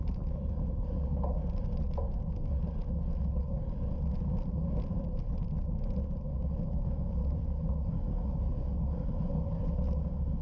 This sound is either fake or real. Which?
real